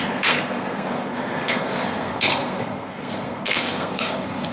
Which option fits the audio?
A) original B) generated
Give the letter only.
B